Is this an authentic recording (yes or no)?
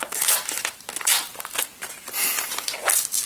yes